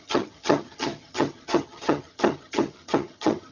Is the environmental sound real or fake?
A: fake